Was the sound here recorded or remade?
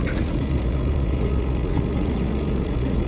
remade